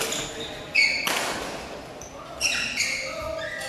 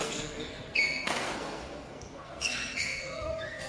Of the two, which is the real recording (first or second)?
first